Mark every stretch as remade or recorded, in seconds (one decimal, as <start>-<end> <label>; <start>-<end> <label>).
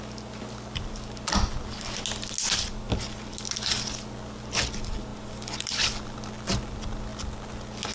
0.0-7.9 recorded